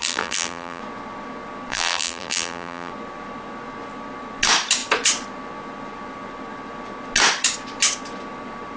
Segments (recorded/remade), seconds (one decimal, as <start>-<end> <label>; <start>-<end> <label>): 0.0-0.8 remade; 0.8-1.7 recorded; 1.7-2.9 remade; 2.9-8.8 recorded